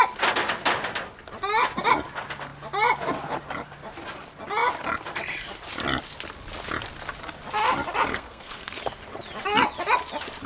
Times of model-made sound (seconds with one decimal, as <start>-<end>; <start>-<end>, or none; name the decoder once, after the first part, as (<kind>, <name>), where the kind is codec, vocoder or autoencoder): 8.1-8.7 (codec, SNAC)